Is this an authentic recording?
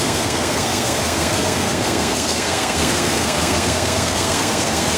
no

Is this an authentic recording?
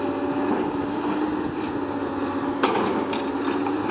yes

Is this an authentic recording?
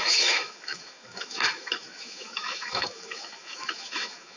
no